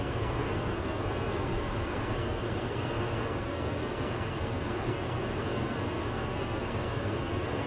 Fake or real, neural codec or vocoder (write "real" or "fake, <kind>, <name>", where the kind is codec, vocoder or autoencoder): fake, codec, SNAC